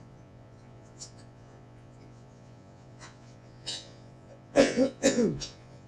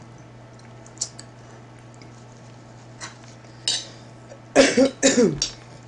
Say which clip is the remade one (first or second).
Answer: first